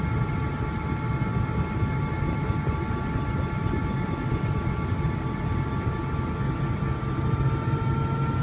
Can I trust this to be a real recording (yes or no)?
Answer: yes